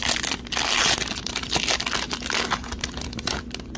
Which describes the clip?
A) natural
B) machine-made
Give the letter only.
A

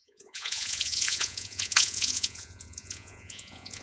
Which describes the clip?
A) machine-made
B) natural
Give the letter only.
A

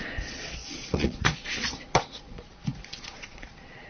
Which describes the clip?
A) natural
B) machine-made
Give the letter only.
B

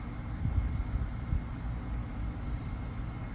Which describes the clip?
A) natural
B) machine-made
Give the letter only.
A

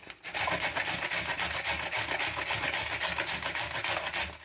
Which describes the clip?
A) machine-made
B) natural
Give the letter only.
B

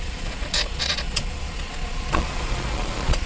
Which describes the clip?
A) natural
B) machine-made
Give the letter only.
B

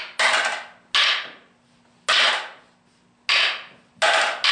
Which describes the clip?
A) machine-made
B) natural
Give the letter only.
B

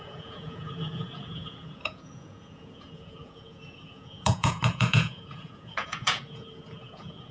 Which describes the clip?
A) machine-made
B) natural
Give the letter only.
A